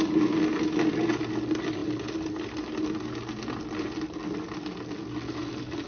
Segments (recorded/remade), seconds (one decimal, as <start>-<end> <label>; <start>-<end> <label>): 0.0-5.9 recorded